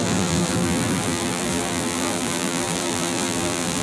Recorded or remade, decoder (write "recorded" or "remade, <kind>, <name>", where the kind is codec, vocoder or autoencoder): remade, vocoder, BigVGAN v2